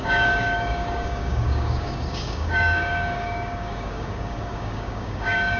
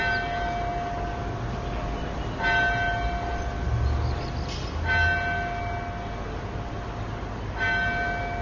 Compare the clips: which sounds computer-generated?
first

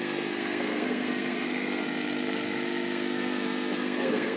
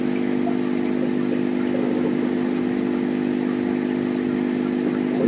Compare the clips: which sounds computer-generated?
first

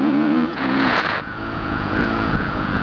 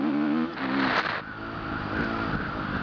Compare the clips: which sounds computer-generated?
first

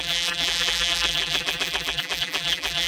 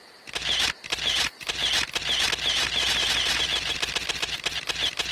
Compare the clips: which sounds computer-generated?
first